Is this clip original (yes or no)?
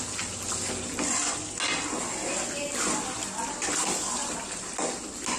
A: yes